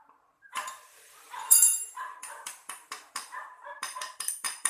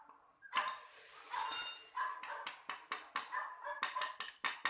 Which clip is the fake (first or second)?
first